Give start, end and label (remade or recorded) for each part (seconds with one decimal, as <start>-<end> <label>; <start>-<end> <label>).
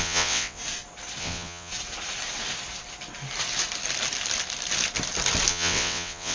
0.0-0.6 remade; 0.6-1.2 recorded; 1.2-1.7 remade; 1.7-5.5 recorded; 5.5-6.3 remade